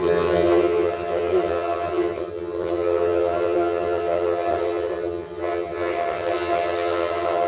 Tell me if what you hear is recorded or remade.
remade